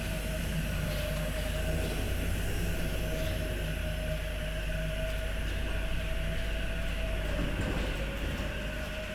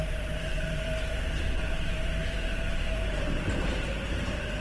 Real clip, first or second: first